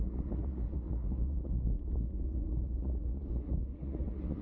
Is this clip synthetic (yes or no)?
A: yes